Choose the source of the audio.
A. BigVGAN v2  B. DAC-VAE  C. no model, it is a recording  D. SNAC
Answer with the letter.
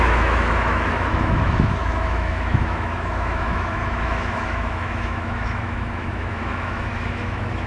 B